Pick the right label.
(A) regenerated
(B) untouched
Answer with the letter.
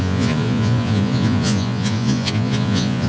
A